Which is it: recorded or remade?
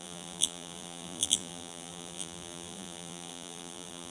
remade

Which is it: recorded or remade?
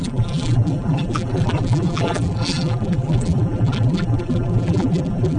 remade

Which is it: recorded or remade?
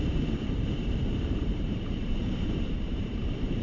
remade